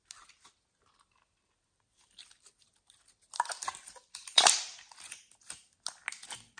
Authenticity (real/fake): real